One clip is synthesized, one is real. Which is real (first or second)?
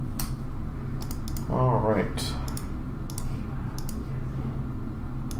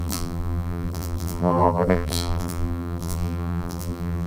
first